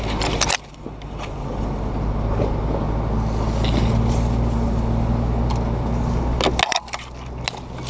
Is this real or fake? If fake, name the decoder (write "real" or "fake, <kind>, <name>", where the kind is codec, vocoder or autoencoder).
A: real